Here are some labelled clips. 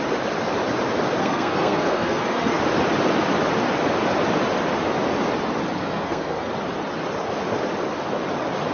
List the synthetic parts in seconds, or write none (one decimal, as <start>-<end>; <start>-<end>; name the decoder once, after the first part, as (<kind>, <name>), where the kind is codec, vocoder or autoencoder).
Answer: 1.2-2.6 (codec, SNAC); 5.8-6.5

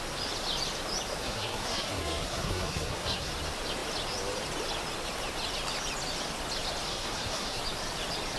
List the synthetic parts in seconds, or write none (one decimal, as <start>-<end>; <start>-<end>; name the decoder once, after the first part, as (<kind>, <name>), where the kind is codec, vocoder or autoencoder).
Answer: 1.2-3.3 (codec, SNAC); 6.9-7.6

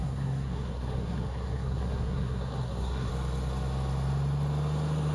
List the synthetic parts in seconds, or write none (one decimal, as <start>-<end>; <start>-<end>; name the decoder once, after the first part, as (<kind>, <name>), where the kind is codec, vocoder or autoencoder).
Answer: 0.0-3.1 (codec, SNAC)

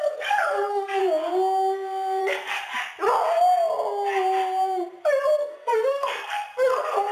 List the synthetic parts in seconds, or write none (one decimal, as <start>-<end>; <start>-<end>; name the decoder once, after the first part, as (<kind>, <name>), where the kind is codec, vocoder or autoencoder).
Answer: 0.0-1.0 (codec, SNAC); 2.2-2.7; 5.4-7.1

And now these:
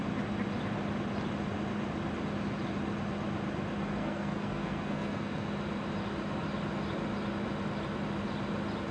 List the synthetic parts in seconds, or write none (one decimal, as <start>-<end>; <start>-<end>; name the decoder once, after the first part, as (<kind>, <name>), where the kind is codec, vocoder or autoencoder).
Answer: 3.8-5.5 (codec, SNAC)

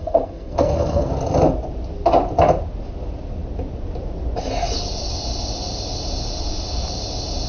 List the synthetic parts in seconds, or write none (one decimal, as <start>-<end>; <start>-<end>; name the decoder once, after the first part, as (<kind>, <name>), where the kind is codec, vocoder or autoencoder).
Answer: 0.0-1.1 (codec, SNAC)